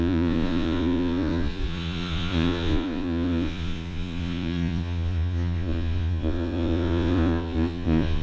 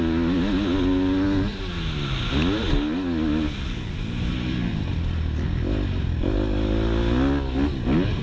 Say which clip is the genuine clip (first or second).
second